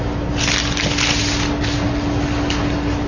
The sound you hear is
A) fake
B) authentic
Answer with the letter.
B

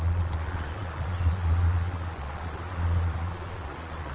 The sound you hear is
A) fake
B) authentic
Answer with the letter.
A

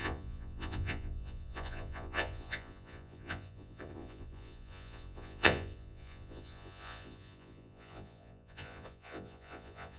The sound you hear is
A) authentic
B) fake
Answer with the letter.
B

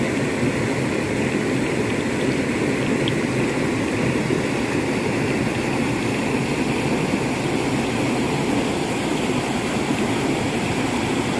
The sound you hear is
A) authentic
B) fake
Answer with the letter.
A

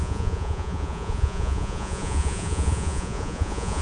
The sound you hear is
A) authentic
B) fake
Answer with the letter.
B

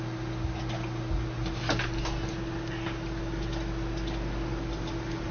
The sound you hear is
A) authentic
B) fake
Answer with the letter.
A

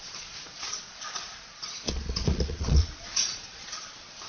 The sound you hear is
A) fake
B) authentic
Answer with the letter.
A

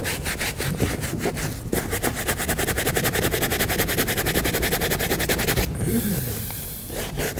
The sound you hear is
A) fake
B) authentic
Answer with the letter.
B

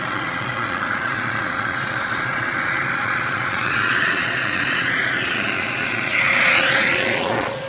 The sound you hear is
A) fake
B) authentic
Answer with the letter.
A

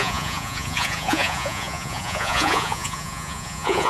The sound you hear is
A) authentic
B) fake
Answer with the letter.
B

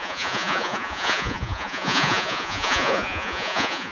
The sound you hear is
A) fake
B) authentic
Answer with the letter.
A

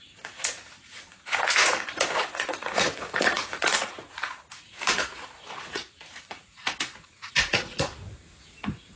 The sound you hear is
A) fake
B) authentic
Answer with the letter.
A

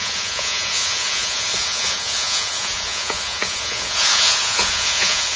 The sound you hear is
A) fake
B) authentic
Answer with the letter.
A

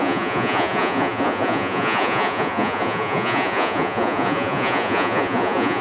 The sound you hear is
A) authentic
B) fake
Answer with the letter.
B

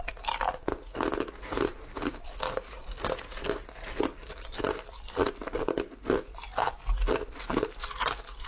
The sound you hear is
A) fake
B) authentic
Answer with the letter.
B